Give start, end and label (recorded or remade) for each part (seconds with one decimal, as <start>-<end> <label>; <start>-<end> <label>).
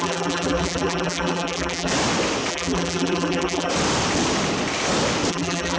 0.0-1.9 remade; 1.9-2.5 recorded; 2.5-3.7 remade; 3.7-5.3 recorded; 5.3-5.8 remade